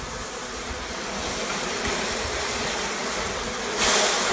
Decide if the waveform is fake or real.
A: real